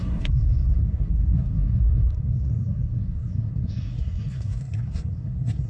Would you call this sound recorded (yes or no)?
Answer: no